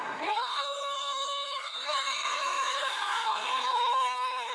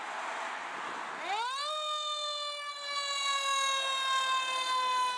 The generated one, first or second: first